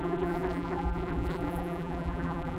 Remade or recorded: remade